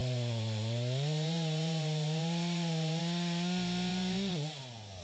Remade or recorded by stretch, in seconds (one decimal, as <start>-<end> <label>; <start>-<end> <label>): 0.0-3.0 remade; 3.0-3.9 recorded; 3.9-5.0 remade